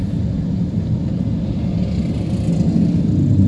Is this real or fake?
real